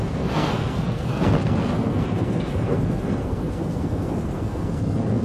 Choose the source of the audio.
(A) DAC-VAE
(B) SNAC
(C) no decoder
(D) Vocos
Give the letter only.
B